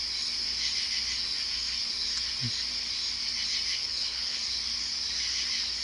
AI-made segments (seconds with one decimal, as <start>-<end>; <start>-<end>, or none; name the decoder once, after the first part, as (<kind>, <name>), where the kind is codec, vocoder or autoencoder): 3.7-4.4 (codec, HILCodec)